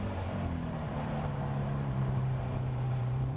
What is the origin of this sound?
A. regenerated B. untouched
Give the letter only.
A